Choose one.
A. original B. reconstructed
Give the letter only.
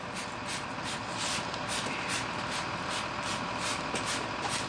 A